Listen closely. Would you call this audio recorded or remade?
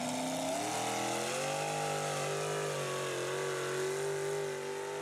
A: recorded